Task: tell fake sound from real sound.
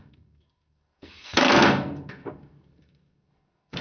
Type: fake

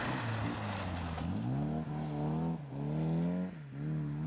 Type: real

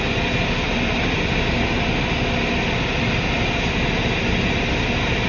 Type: real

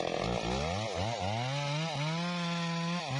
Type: real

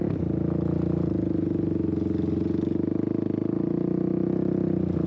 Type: real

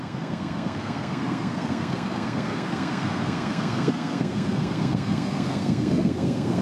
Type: fake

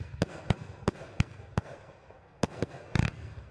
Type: fake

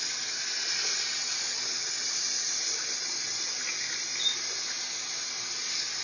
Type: real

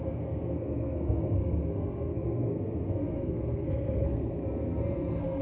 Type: fake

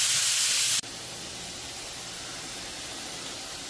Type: real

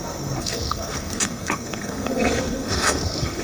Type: fake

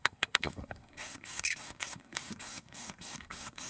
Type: fake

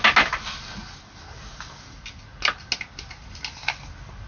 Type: real